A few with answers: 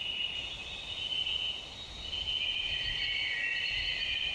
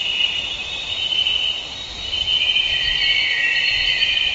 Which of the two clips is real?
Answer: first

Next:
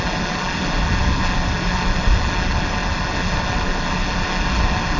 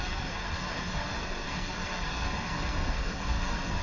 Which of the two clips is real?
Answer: first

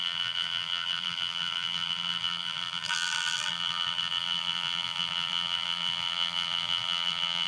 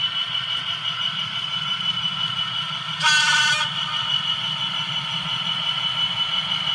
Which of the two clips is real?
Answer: second